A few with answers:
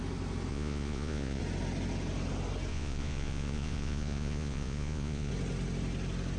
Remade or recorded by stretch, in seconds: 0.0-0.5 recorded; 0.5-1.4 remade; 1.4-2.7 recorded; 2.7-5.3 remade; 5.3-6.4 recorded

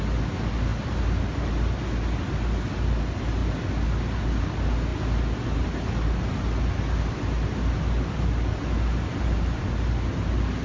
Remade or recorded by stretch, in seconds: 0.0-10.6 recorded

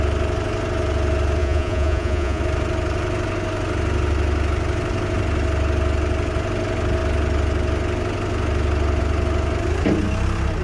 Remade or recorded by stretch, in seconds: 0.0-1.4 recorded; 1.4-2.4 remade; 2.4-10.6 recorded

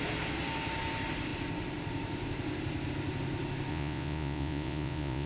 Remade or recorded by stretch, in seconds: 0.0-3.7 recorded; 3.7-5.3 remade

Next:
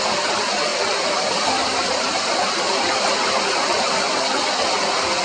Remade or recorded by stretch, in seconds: 0.0-5.2 recorded

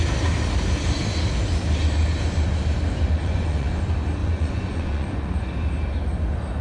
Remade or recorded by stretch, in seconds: 0.0-3.2 recorded; 3.2-3.8 remade; 3.8-4.2 recorded; 4.2-5.3 remade; 5.3-6.6 recorded